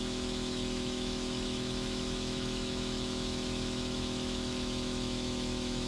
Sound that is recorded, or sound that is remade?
remade